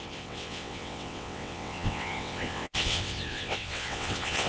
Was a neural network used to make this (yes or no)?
yes